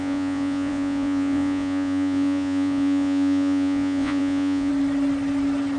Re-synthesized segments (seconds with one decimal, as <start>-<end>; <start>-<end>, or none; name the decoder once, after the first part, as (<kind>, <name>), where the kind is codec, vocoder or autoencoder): 0.0-4.7 (vocoder, Vocos)